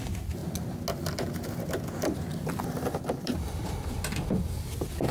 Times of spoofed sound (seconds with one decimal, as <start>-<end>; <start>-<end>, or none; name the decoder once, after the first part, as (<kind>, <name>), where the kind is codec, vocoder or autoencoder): 2.3-4.0 (vocoder, BigVGAN v2)